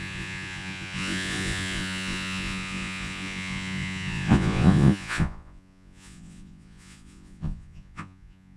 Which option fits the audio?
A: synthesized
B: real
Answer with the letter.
A